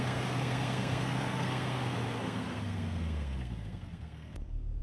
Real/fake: fake